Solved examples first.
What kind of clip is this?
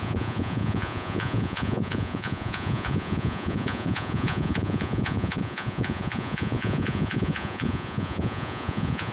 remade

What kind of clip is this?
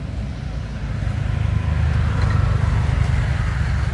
recorded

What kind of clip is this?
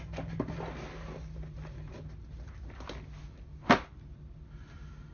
recorded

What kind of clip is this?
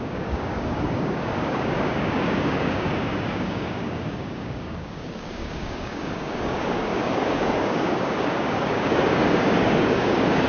remade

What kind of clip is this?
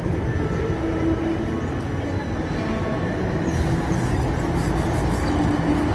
recorded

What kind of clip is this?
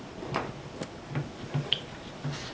recorded